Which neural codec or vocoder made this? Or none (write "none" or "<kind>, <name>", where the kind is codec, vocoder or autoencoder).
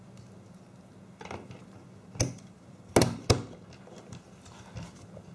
none